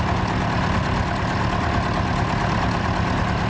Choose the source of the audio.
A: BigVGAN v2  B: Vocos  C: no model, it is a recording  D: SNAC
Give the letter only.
C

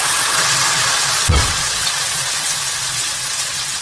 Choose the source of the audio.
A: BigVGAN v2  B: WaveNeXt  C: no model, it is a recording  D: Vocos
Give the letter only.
B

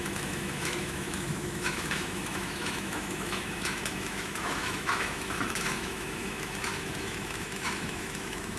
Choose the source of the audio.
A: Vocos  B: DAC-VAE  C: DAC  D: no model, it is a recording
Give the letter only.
B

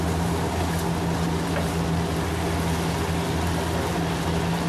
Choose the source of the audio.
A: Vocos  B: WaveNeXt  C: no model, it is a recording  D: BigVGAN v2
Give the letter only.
C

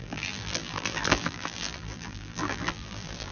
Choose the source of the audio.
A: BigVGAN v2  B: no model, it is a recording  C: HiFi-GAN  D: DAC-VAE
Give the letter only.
A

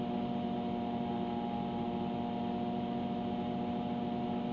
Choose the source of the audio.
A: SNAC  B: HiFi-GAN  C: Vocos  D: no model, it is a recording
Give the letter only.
D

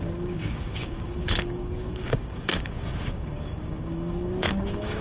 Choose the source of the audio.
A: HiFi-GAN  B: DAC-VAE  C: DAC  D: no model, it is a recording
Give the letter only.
C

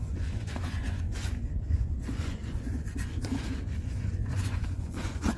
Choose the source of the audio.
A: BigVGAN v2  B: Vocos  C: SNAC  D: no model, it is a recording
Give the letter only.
B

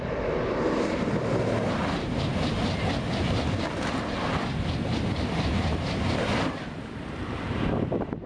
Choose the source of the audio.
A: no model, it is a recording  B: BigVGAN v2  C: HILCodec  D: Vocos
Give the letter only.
A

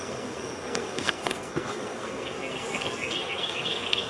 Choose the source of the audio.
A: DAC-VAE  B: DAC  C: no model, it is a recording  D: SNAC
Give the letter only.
D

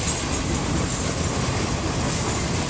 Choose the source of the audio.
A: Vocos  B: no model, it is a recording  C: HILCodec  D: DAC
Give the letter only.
B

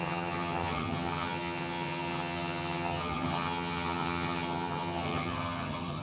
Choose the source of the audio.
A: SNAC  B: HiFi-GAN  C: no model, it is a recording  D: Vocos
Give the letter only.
B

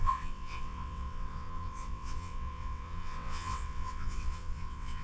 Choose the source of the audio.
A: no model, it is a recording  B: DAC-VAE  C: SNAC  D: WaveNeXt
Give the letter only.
D